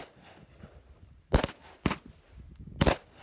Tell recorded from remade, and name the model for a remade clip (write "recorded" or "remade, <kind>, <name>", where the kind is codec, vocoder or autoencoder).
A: recorded